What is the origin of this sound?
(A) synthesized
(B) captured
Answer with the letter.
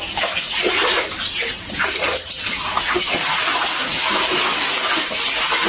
B